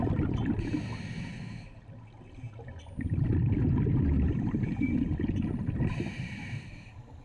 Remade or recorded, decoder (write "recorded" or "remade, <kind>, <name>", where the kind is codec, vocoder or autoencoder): recorded